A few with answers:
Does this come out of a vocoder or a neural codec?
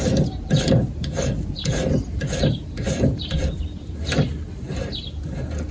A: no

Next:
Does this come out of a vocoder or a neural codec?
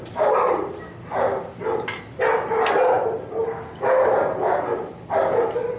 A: no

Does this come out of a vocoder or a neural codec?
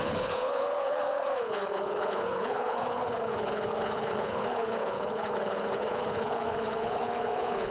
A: yes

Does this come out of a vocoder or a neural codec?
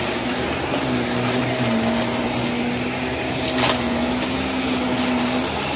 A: no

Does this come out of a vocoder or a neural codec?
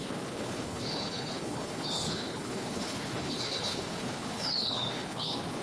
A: yes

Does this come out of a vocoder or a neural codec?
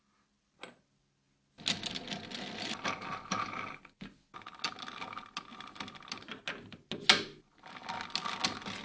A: no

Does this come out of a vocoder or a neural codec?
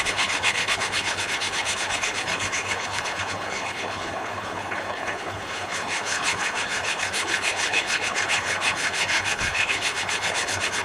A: yes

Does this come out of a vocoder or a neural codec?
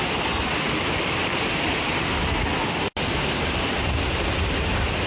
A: no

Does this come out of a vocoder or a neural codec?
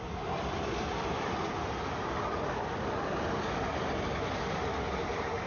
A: no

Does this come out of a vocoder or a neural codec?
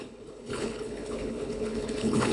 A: yes